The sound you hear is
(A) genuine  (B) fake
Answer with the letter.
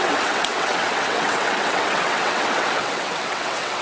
B